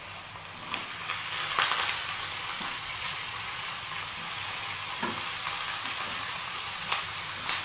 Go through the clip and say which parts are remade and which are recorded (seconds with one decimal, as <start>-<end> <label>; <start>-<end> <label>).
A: 0.0-2.9 recorded; 2.9-3.9 remade; 3.9-6.1 recorded; 6.1-7.0 remade; 7.0-7.6 recorded